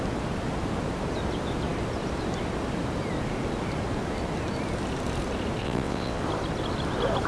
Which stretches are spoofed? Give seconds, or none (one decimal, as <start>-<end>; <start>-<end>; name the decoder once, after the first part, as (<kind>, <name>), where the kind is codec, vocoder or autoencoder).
5.6-6.2 (vocoder, WaveNeXt)